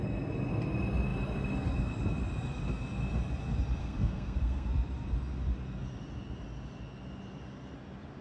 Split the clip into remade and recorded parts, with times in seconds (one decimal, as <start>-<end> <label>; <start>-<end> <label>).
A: 0.0-3.8 recorded; 3.8-4.7 remade; 4.7-8.2 recorded